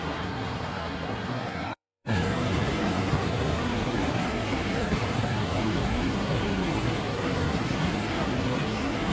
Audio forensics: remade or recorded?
remade